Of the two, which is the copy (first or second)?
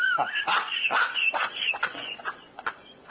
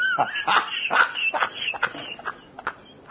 first